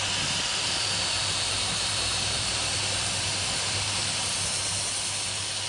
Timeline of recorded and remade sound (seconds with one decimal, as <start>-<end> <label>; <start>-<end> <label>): 0.0-0.6 recorded; 0.6-4.0 remade; 4.0-5.7 recorded